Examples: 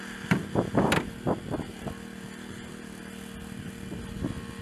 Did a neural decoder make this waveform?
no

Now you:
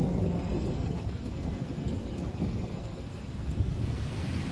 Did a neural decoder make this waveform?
yes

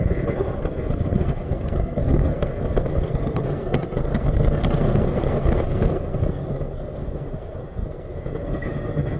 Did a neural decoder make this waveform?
yes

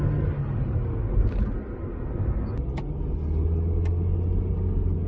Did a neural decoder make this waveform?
no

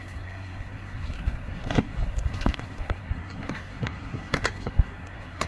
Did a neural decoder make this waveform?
yes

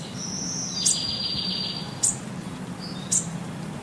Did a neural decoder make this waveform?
no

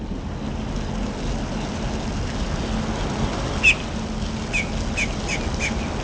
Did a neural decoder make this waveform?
no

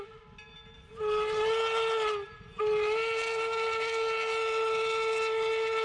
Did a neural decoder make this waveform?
no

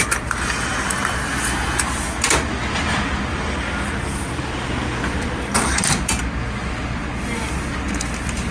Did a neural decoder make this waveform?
no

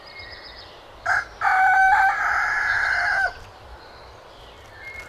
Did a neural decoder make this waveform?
no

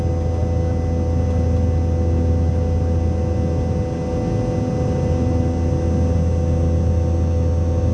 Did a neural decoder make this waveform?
no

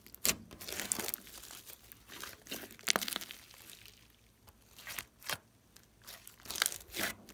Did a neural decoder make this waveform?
no